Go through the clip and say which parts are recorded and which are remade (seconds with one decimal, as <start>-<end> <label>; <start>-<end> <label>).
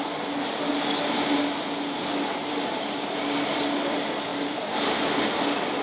0.0-2.4 recorded; 2.4-3.1 remade; 3.1-4.3 recorded; 4.3-4.9 remade; 4.9-5.8 recorded